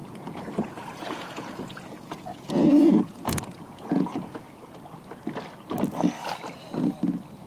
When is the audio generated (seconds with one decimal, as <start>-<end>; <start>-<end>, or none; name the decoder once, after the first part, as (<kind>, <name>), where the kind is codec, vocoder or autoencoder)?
0.0-4.4 (vocoder, Vocos)